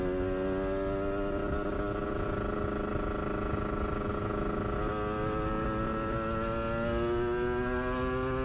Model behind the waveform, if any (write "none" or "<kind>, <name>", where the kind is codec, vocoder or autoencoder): none